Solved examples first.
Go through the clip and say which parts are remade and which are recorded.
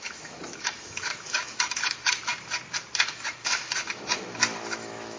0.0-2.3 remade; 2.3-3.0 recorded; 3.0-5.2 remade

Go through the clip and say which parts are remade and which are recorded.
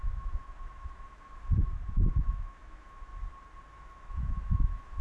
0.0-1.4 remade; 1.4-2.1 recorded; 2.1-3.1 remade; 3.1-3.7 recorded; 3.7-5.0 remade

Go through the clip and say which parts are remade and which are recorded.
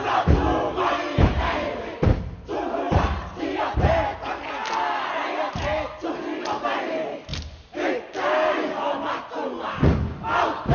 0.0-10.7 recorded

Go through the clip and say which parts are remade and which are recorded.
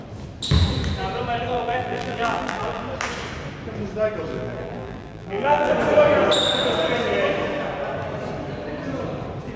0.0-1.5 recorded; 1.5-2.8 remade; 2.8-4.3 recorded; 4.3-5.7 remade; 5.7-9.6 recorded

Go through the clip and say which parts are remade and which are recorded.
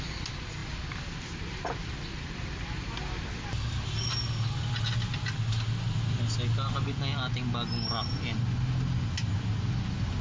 0.0-10.2 recorded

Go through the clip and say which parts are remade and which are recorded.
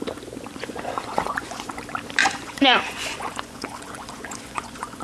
0.0-0.5 recorded; 0.5-1.7 remade; 1.7-2.2 recorded; 2.2-5.0 remade